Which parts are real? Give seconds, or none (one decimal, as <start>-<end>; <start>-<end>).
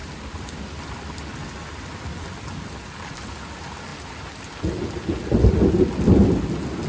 0.0-6.9